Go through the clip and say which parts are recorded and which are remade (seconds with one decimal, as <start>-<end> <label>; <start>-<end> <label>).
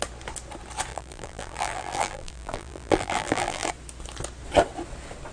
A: 0.0-0.9 recorded; 0.9-3.7 remade; 3.7-5.3 recorded